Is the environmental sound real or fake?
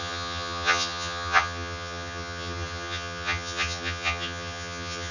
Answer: fake